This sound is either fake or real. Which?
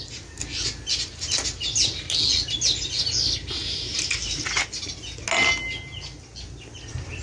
real